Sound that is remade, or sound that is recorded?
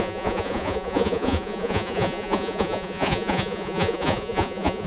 remade